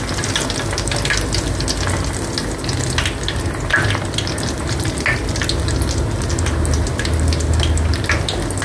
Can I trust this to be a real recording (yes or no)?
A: yes